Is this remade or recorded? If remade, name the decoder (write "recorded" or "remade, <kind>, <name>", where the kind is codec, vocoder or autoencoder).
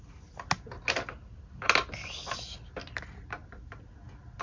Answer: recorded